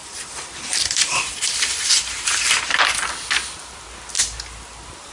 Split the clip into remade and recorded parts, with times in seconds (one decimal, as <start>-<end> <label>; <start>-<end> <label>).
0.0-3.1 remade; 3.1-5.1 recorded